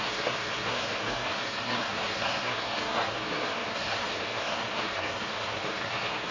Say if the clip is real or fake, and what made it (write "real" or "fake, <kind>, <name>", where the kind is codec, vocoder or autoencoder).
fake, codec, SNAC